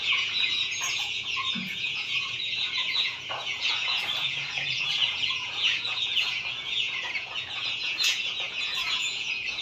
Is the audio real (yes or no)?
no